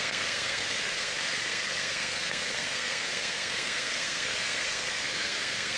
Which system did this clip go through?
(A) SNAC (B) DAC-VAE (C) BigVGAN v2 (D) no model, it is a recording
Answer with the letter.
A